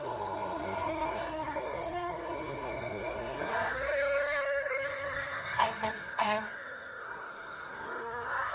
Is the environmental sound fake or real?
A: fake